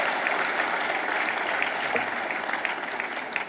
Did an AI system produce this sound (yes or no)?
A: no